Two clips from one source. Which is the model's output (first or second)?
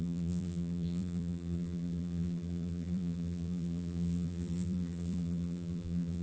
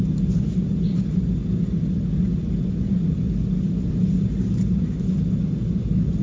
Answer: first